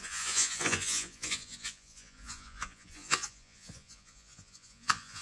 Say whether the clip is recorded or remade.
remade